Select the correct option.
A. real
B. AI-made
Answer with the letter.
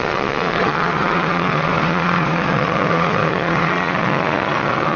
B